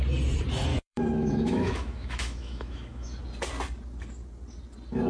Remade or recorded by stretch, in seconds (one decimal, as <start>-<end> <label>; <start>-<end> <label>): 0.0-0.7 recorded; 0.7-3.2 remade; 3.2-5.1 recorded